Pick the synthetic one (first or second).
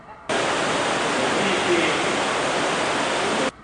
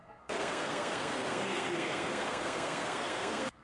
second